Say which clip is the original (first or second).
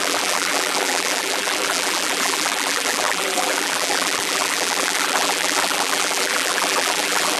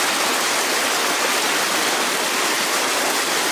second